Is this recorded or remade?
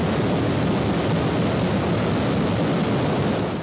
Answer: recorded